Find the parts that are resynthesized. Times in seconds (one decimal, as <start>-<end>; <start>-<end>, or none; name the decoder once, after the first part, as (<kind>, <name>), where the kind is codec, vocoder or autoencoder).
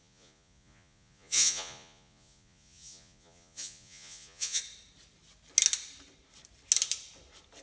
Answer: 0.0-4.6 (vocoder, Vocos)